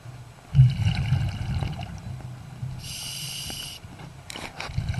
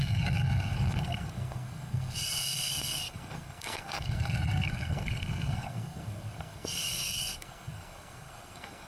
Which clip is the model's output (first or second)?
second